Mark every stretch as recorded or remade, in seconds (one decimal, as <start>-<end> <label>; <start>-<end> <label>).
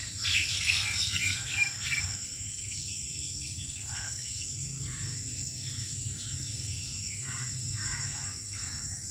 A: 0.0-9.1 remade